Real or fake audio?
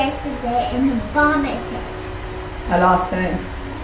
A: real